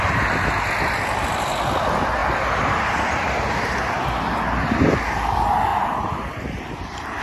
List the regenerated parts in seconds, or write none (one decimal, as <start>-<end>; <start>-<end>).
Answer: none